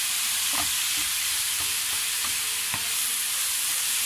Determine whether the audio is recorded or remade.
remade